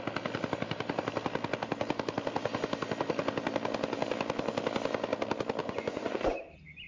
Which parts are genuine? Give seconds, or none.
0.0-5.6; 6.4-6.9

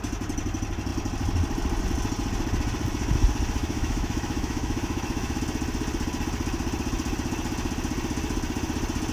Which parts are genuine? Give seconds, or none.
0.0-3.6; 5.4-9.1